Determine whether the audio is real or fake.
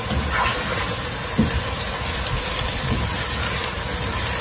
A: real